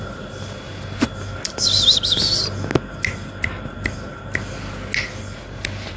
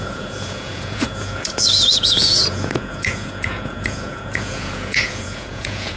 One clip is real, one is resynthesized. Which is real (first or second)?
first